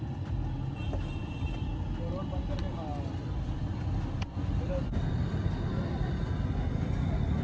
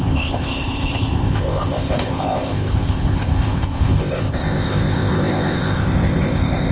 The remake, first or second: second